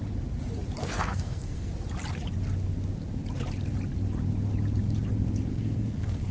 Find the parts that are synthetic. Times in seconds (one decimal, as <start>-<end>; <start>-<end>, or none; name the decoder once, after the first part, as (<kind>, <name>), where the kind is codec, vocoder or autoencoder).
0.8-1.7 (codec, SNAC); 5.5-6.3